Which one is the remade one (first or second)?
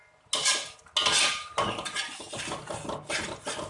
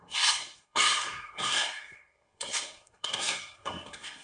second